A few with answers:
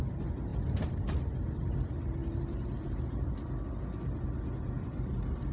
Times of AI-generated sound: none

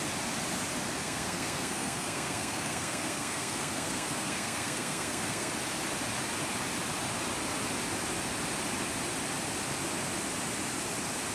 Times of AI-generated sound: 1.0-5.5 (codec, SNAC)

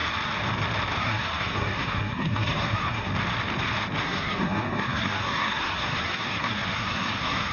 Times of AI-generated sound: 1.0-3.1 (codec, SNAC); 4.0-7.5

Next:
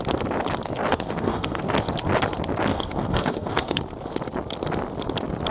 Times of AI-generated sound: 0.9-1.6 (codec, SNAC); 2.7-3.8

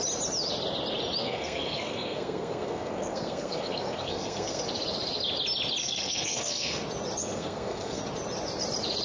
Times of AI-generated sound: 1.2-4.6 (codec, SNAC); 5.8-6.8; 7.2-8.0

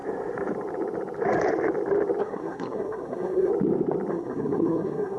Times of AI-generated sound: 2.2-3.5 (codec, SNAC); 4.1-5.2

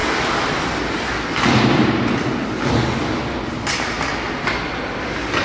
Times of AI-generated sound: none

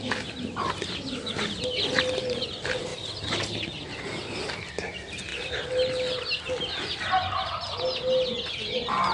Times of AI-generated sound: none